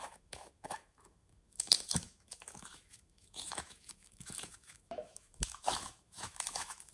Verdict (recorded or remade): remade